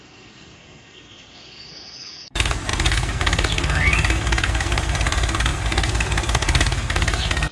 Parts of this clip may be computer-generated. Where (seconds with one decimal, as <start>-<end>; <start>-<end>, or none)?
0.0-7.5